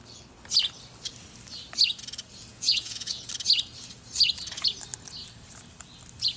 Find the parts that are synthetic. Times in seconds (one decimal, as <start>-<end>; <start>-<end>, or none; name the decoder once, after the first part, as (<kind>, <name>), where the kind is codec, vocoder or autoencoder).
2.5-3.2 (vocoder, Vocos)

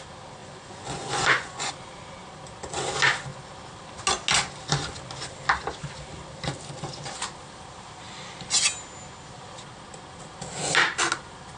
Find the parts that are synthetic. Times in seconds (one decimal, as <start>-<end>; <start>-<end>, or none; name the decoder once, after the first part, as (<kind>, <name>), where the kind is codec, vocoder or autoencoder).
0.4-1.7 (vocoder, Vocos)

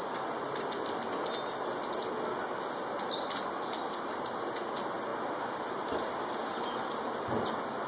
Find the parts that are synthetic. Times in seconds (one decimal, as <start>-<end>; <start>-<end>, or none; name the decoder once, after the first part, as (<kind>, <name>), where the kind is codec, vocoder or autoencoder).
none

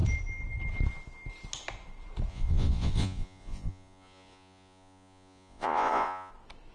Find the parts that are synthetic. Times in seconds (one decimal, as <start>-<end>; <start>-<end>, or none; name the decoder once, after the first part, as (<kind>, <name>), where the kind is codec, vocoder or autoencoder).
2.3-6.3 (vocoder, Vocos)